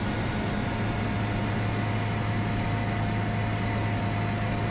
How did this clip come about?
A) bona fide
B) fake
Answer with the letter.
A